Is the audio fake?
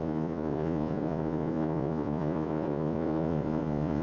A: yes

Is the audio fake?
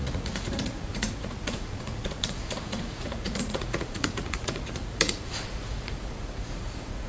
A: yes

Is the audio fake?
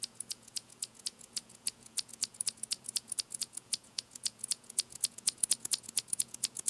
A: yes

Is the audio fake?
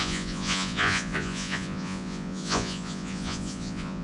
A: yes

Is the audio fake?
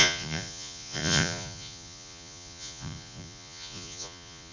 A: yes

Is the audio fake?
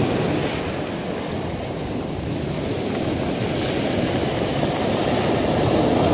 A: no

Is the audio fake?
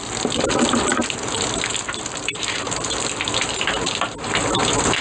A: no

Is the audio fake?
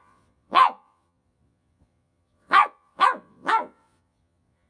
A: yes